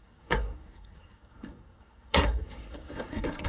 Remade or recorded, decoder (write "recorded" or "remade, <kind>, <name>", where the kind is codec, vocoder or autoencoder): remade, codec, SNAC